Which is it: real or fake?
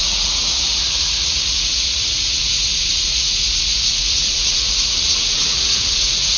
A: fake